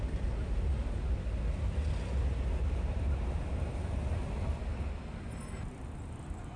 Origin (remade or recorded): recorded